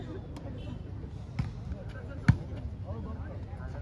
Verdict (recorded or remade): recorded